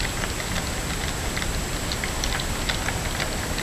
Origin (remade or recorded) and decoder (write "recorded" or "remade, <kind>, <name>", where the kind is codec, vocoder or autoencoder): recorded